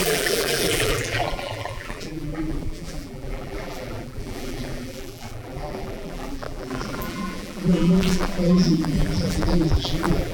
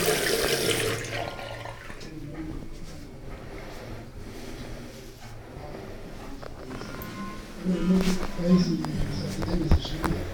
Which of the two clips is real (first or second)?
second